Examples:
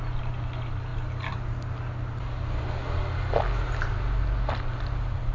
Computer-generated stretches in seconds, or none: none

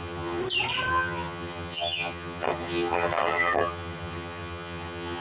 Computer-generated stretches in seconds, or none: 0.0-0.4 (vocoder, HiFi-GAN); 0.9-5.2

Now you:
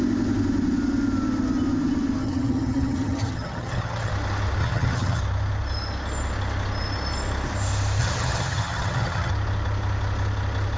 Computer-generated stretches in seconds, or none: 2.2-4.1 (vocoder, HiFi-GAN); 4.6-5.2; 8.0-9.3